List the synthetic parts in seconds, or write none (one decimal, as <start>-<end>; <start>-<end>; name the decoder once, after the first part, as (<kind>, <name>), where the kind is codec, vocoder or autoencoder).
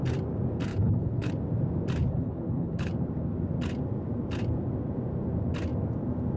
0.7-1.3 (codec, HILCodec); 2.0-2.9